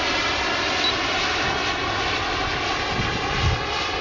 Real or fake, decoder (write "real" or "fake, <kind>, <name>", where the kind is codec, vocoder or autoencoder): real